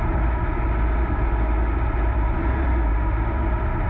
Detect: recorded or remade recorded